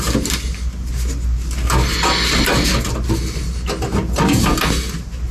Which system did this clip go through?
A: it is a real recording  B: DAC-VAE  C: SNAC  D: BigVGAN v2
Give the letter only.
A